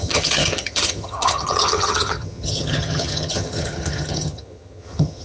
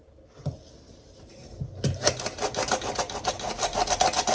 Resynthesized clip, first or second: first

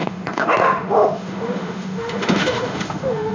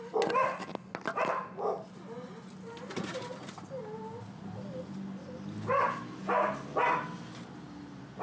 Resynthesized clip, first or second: first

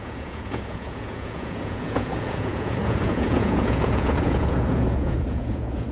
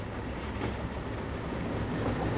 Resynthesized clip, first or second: first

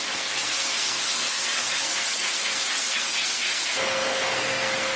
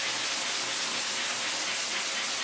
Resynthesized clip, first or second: first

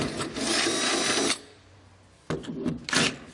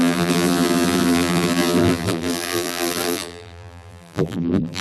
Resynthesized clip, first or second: second